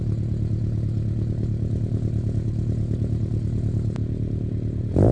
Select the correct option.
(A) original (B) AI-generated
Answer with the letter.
A